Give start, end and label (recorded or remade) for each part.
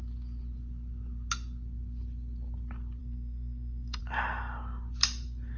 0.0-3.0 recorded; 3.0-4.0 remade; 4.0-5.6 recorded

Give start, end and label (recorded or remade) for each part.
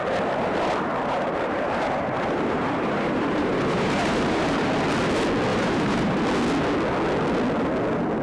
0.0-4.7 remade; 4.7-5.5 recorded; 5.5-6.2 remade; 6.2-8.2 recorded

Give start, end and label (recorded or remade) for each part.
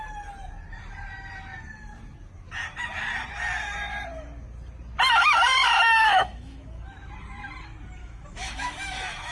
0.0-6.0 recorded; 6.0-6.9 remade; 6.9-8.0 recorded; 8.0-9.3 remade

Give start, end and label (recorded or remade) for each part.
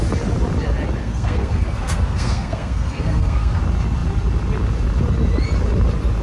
0.0-1.0 recorded; 1.0-3.6 remade; 3.6-6.2 recorded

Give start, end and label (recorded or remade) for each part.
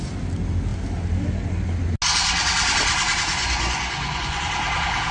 0.0-3.4 recorded; 3.4-4.4 remade; 4.4-5.1 recorded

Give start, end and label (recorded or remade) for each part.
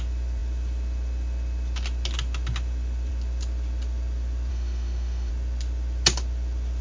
0.0-4.5 recorded; 4.5-5.3 remade; 5.3-6.8 recorded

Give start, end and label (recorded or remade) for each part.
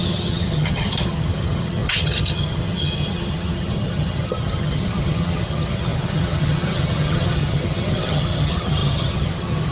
0.0-9.7 remade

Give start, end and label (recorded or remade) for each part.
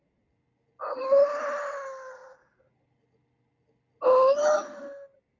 0.0-5.4 recorded